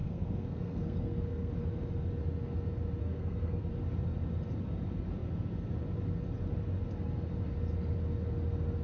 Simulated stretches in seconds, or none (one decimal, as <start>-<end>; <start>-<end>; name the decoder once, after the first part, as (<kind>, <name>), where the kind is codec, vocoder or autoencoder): 0.0-1.5 (codec, SNAC); 3.0-3.7